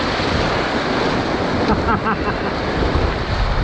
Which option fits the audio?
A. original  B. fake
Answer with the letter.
A